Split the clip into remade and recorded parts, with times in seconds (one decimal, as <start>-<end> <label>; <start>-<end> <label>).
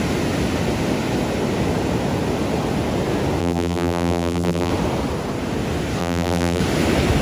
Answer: 0.0-3.4 recorded; 3.4-4.7 remade; 4.7-6.0 recorded; 6.0-6.6 remade; 6.6-7.2 recorded